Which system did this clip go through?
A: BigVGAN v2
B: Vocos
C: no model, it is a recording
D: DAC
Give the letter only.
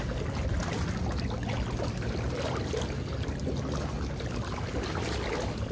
C